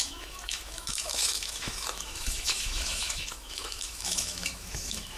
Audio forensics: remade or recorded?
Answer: remade